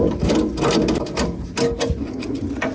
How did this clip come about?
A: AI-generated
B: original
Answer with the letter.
B